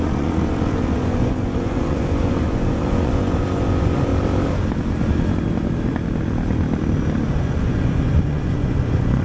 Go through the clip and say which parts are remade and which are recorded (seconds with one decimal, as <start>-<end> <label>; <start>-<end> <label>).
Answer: 0.0-4.1 remade; 4.1-7.3 recorded; 7.3-9.2 remade